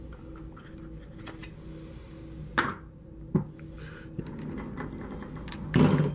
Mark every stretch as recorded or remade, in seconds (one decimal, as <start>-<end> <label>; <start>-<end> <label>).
0.0-6.1 recorded